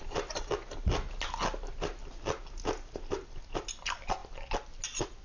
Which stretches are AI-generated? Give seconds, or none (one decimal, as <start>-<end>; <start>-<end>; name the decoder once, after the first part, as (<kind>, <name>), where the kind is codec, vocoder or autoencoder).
none